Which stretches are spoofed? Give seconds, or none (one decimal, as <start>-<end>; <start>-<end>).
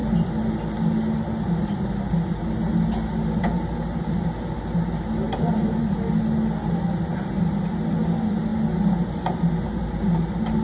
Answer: none